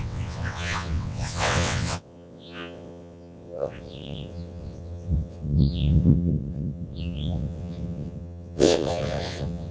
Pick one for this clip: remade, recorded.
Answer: remade